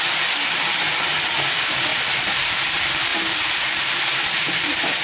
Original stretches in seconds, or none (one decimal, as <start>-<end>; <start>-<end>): 1.9-2.5; 3.1-3.8